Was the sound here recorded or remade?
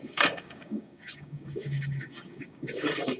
remade